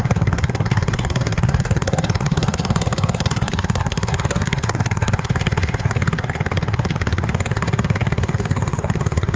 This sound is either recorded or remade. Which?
remade